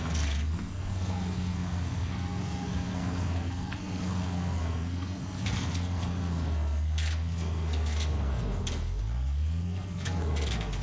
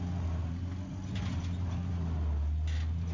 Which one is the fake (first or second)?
first